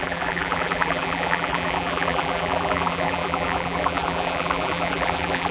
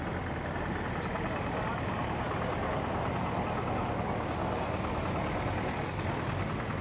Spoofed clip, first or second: first